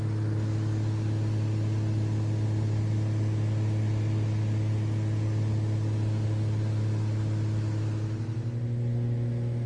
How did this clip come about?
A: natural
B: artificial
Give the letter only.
A